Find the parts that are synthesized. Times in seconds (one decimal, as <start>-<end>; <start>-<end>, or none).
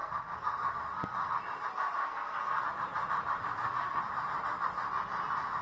0.0-1.4; 2.0-2.7; 3.4-4.0